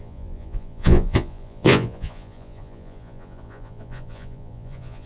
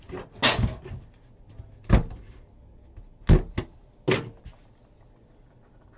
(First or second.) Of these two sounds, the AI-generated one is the first